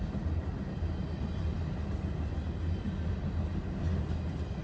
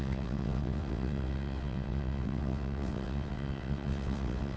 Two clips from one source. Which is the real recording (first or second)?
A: first